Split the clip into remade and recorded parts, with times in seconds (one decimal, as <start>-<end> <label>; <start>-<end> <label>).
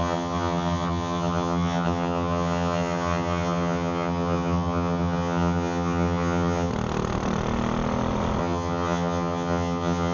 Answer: 0.0-6.7 remade; 6.7-8.4 recorded; 8.4-10.1 remade